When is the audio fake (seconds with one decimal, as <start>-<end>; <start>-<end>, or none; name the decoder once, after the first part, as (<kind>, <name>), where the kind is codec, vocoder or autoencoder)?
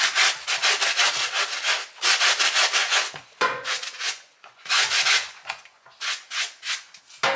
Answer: 2.8-7.0 (vocoder, Vocos)